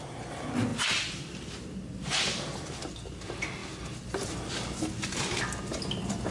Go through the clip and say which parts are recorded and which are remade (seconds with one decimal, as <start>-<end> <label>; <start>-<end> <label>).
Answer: 0.0-6.3 recorded

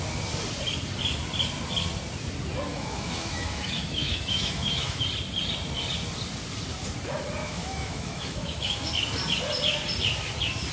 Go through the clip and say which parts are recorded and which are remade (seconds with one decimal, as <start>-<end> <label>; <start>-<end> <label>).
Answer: 0.0-2.7 recorded; 2.7-5.0 remade; 5.0-7.4 recorded; 7.4-8.9 remade; 8.9-10.7 recorded